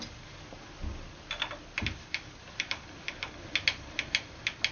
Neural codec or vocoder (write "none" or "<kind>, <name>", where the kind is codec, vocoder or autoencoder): none